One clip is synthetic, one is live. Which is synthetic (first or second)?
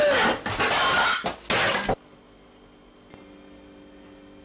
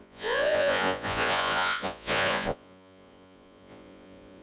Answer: second